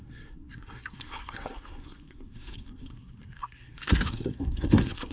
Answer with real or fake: fake